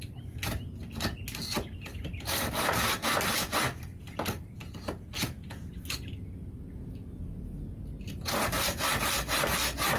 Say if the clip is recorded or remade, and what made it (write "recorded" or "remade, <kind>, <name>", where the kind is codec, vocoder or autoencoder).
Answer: recorded